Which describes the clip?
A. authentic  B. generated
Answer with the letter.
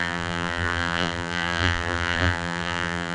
B